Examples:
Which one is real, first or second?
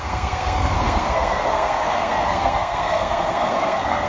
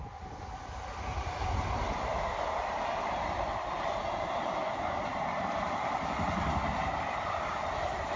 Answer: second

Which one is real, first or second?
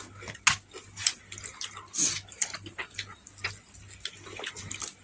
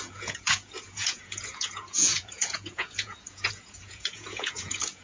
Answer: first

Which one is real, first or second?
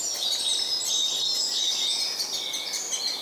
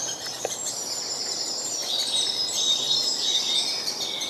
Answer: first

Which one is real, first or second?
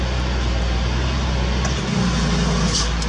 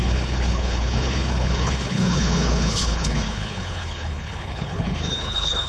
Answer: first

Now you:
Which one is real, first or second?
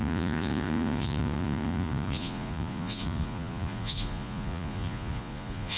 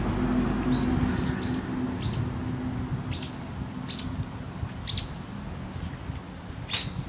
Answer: second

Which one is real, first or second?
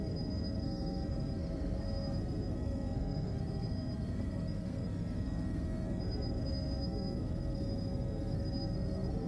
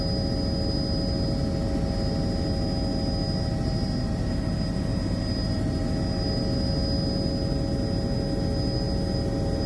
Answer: second